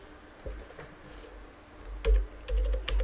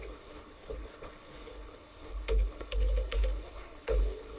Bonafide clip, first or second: first